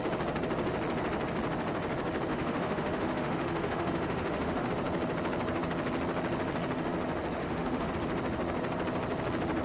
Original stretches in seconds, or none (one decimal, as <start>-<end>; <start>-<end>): 0.0-2.3; 4.7-7.4; 7.9-9.6

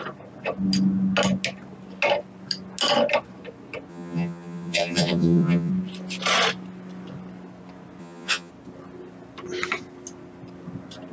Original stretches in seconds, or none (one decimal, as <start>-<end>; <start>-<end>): 0.0-3.9; 5.7-8.0; 8.5-11.1

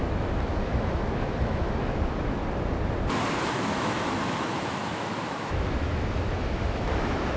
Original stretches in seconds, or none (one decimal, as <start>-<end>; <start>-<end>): 2.4-3.5